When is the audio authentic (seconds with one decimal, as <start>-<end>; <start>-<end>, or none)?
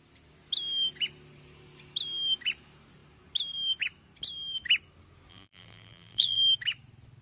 0.0-5.3; 6.4-7.2